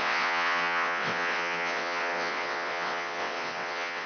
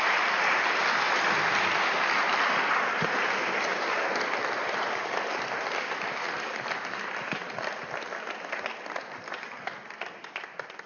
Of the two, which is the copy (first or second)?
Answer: first